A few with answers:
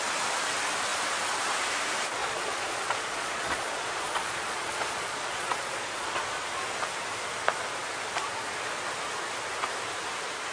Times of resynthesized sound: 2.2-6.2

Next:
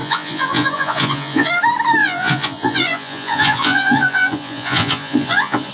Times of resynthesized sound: 0.0-1.5; 2.0-5.7

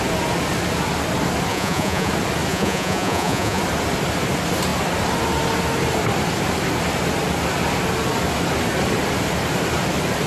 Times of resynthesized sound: 1.5-2.1; 2.5-3.6

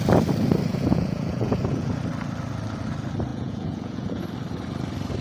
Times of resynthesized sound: 0.7-2.0; 3.3-4.2

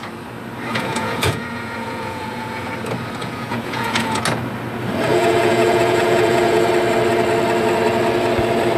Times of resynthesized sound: 0.7-2.7; 3.2-4.2; 5.1-6.7